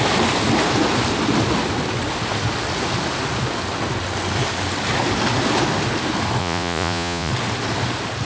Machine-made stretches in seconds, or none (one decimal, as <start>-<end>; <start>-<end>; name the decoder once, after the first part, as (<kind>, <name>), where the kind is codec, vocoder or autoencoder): 6.4-7.3 (vocoder, Vocos)